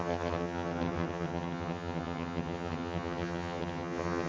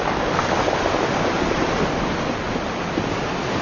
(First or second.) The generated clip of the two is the first